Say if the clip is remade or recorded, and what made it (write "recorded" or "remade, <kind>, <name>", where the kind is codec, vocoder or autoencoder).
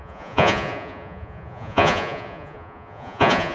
remade, vocoder, Vocos